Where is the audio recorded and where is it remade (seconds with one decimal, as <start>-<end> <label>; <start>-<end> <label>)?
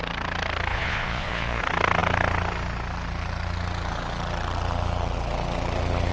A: 0.0-0.7 recorded; 0.7-1.6 remade; 1.6-6.1 recorded